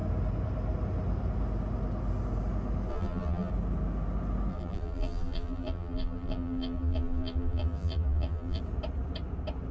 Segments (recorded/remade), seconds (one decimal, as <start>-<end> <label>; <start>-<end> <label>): 0.0-2.9 recorded; 2.9-3.5 remade; 3.5-4.5 recorded; 4.5-8.6 remade; 8.6-9.7 recorded